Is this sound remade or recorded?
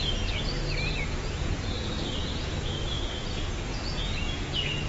remade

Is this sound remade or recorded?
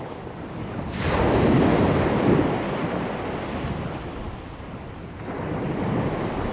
recorded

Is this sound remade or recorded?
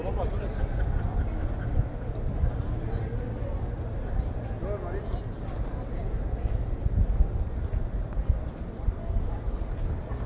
recorded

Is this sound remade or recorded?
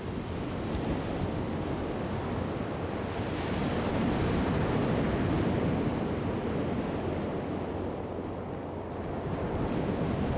recorded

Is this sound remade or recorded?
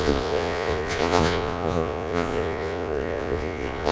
remade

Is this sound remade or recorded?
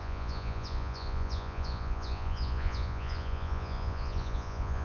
remade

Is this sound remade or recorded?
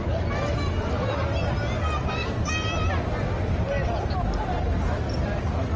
recorded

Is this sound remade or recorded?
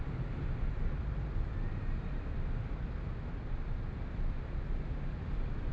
recorded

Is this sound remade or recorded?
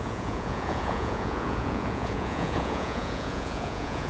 remade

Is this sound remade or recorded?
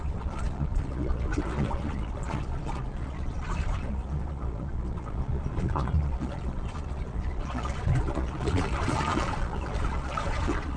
remade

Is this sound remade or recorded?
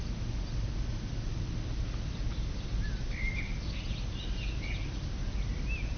recorded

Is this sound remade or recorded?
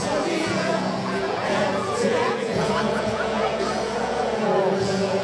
remade